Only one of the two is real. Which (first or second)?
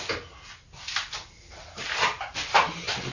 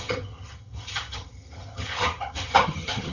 first